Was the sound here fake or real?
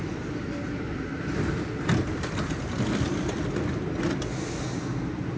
real